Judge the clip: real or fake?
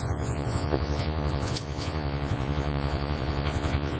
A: fake